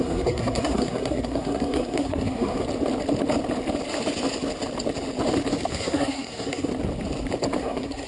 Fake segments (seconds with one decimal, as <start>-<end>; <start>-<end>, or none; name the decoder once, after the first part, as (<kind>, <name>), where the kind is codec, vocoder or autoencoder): 0.0-2.6 (codec, SNAC); 5.7-6.7; 7.6-8.1